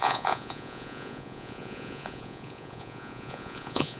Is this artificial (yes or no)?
yes